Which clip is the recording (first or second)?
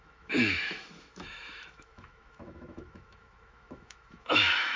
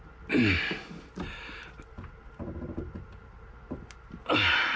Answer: second